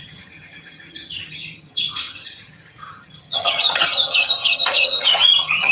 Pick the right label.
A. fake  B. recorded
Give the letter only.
A